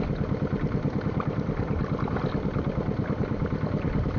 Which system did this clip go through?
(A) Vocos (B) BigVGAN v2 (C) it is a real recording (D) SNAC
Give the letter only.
B